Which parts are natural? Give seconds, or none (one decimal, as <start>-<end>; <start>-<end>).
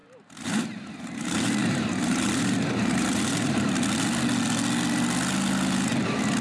3.7-6.4